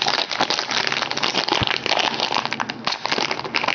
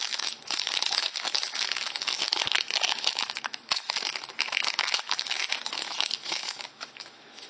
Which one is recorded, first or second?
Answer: first